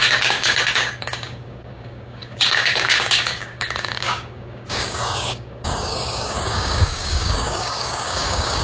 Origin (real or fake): fake